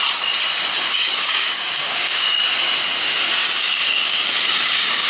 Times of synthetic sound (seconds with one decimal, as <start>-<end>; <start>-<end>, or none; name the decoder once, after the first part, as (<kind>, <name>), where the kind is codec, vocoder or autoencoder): 0.9-2.4 (codec, DAC); 3.4-5.1